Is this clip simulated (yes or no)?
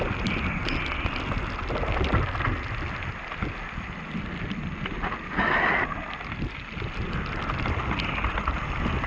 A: no